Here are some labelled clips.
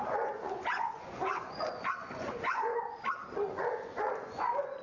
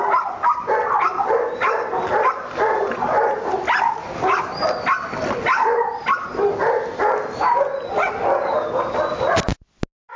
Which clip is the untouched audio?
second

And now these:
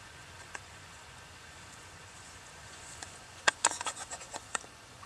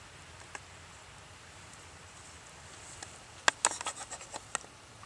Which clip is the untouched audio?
second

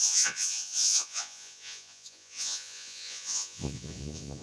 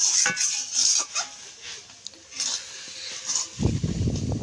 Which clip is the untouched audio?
second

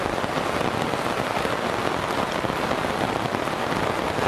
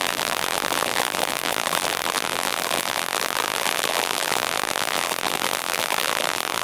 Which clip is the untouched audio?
first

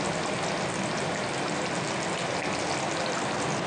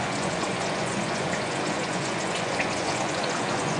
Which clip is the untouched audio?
first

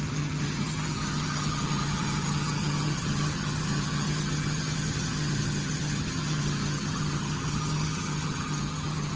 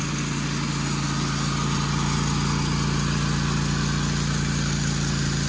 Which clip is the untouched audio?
second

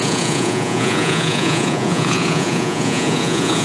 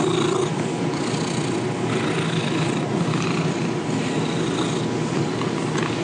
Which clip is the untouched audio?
second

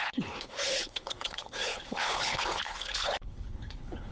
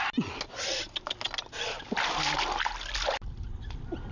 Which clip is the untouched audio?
second